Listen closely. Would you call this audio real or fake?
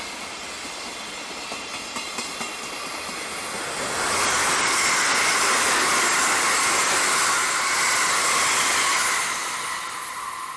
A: real